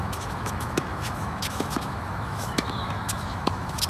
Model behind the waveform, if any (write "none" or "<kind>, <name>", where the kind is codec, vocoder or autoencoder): autoencoder, DAC-VAE